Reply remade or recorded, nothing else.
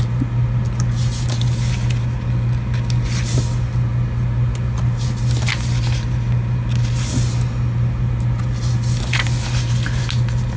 recorded